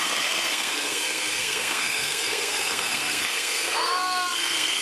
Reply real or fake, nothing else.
fake